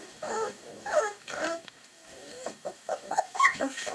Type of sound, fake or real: fake